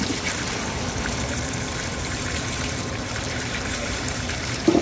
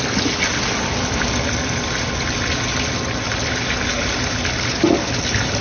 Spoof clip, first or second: first